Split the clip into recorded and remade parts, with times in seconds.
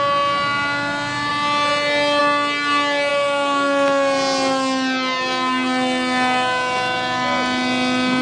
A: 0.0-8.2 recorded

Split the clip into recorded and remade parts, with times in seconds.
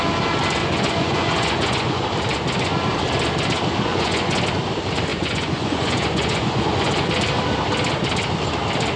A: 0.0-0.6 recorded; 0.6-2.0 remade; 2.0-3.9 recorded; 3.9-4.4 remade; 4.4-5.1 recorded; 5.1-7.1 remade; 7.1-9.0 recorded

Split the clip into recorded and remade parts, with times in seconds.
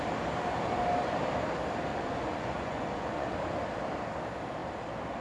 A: 0.0-1.9 recorded; 1.9-3.3 remade; 3.3-5.2 recorded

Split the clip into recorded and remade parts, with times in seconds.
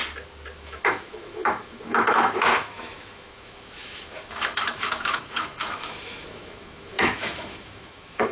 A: 0.0-0.6 recorded; 0.6-8.3 remade